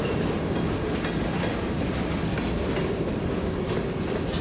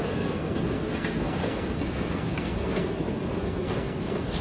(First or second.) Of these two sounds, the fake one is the second